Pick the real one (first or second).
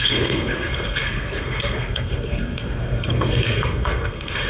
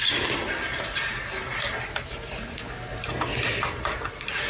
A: second